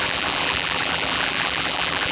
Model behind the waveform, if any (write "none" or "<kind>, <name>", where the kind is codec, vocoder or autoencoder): vocoder, BigVGAN v2